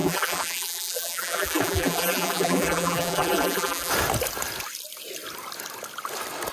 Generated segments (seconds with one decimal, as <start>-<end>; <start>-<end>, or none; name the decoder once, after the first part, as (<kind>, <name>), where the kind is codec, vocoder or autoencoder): 0.0-3.9 (vocoder, BigVGAN v2)